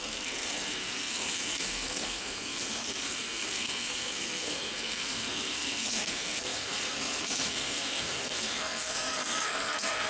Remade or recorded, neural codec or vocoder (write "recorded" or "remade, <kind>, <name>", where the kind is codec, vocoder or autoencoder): remade, codec, SNAC